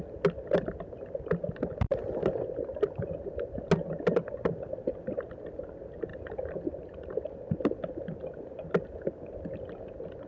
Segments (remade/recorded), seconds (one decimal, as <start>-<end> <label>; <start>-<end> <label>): 0.0-10.3 recorded